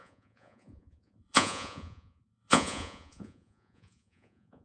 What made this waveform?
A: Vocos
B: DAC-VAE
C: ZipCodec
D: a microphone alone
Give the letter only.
A